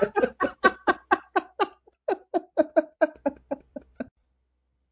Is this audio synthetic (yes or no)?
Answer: no